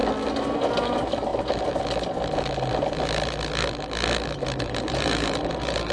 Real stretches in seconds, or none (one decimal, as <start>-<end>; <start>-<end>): 0.0-0.7; 1.3-4.6